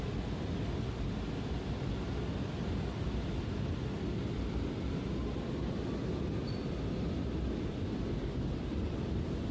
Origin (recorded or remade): recorded